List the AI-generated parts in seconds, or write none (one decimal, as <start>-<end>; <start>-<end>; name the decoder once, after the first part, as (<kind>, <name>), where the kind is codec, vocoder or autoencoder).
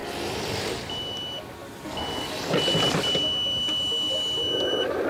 none